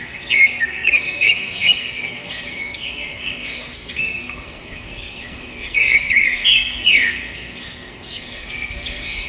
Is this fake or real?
fake